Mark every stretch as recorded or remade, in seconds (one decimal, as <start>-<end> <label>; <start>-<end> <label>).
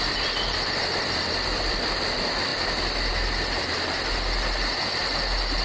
0.0-5.6 recorded